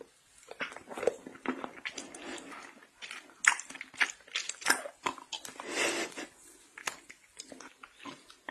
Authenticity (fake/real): real